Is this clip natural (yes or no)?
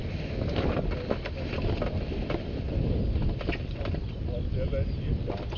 yes